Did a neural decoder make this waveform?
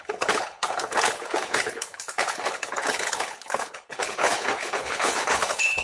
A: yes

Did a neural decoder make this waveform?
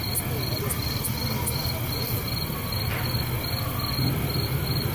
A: no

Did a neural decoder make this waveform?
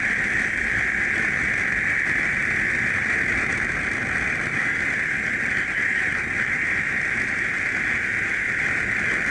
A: no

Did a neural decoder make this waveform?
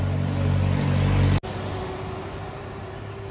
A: no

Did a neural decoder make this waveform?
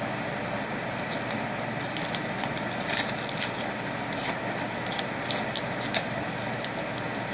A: no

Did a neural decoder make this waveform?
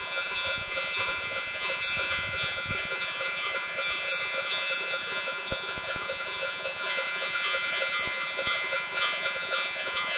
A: yes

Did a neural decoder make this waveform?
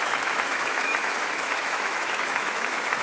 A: yes